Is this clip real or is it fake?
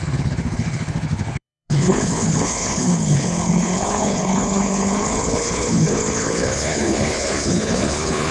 fake